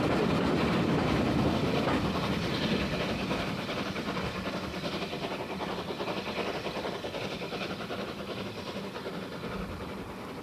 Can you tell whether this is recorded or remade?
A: recorded